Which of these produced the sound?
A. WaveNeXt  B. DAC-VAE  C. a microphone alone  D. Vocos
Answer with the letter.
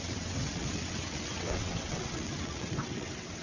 A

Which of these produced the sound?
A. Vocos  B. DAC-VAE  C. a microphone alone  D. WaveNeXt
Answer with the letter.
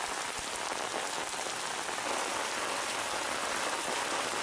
C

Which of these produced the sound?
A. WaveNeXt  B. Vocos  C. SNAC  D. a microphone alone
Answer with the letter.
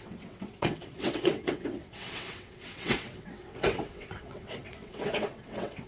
A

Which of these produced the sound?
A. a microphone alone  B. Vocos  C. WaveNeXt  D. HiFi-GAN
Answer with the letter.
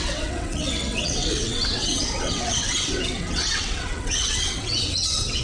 C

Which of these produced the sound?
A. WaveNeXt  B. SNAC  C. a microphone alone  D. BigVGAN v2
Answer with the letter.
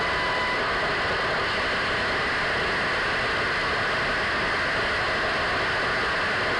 C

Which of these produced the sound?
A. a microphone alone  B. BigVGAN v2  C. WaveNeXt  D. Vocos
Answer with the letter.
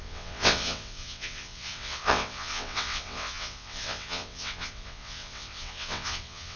C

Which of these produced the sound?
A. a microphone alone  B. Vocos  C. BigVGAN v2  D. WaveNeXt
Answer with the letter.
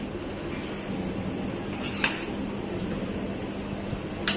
A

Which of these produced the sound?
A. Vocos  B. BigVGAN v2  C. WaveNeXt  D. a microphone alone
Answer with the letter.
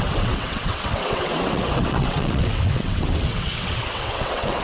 C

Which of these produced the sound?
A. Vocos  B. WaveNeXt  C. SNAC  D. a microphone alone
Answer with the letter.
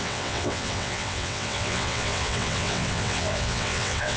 B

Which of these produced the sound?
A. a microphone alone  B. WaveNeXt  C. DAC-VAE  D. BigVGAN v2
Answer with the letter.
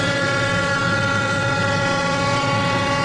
B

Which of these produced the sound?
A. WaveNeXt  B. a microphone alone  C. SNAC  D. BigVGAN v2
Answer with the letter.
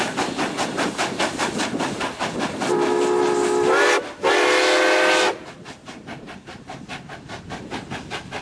B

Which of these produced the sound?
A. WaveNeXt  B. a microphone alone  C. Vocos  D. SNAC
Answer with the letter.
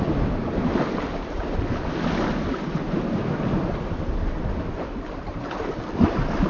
B